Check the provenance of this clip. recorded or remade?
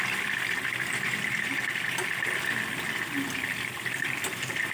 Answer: recorded